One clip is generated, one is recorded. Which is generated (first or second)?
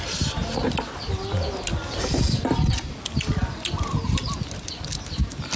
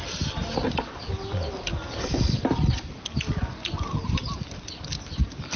second